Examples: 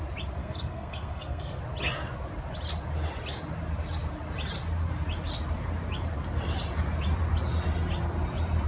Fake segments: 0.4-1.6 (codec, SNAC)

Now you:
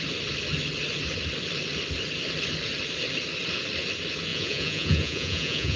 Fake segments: 4.3-5.8 (vocoder, Vocos)

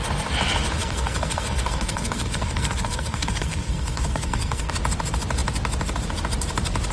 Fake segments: 0.8-4.7 (codec, SNAC)

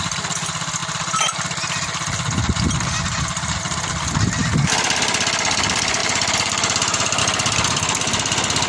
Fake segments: 6.0-7.2 (vocoder, BigVGAN v2)

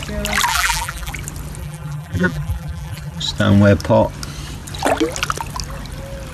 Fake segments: 0.5-1.1 (vocoder, BigVGAN v2); 1.6-3.2

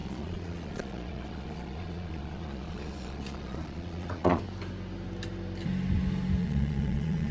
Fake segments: 0.0-4.4 (vocoder, Vocos); 6.4-7.3